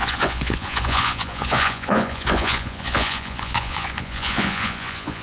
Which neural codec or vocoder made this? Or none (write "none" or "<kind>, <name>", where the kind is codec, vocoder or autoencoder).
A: vocoder, Vocos